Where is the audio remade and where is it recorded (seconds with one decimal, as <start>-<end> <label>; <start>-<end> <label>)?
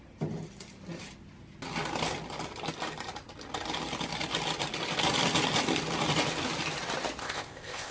0.0-7.2 recorded; 7.2-7.9 remade